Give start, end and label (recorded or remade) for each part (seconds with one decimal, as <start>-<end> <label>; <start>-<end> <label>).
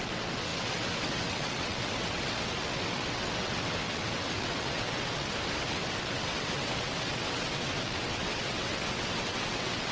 0.0-9.9 remade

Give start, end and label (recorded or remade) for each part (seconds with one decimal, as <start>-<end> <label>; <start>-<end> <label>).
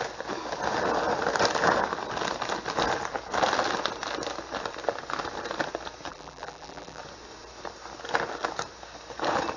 0.0-6.1 recorded; 6.1-7.0 remade; 7.0-9.6 recorded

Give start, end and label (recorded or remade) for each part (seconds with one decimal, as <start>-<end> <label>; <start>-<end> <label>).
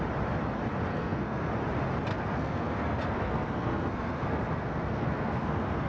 0.0-0.9 recorded; 0.9-1.5 remade; 1.5-2.1 recorded; 2.1-5.9 remade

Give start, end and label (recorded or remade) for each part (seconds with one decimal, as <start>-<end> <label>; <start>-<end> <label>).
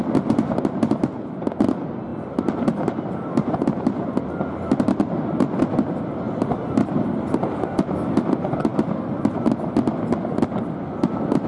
0.0-2.1 recorded; 2.1-4.4 remade; 4.4-11.5 recorded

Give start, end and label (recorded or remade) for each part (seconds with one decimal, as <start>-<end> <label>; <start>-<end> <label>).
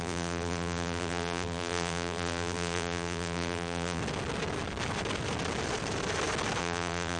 0.0-4.0 remade; 4.0-6.6 recorded; 6.6-7.2 remade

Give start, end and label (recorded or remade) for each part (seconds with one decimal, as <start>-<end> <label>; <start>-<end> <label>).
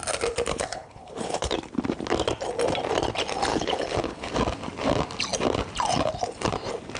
0.0-0.5 recorded; 0.5-1.5 remade; 1.5-3.5 recorded; 3.5-4.3 remade; 4.3-7.0 recorded